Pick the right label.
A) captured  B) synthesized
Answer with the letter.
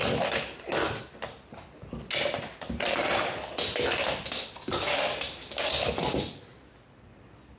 A